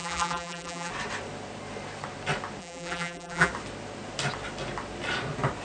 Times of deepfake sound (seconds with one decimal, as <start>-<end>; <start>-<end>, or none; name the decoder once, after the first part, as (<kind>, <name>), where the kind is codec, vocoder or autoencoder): 0.0-0.9 (vocoder, BigVGAN v2); 2.6-3.5